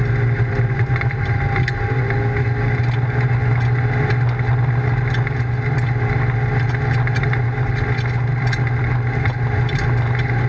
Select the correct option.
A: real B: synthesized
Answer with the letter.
A